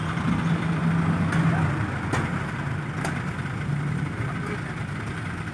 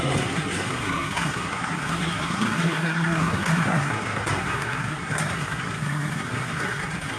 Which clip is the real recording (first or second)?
first